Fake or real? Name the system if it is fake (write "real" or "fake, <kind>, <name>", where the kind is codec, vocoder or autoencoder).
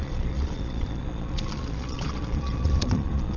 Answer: fake, vocoder, Vocos